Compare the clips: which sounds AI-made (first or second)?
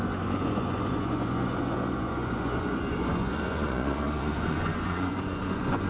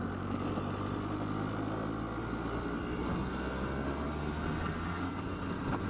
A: first